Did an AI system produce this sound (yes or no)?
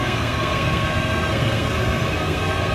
yes